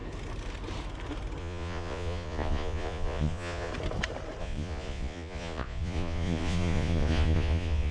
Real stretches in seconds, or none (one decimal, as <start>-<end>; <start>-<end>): 0.0-1.4; 3.7-4.4